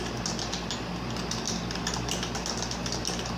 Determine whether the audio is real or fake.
real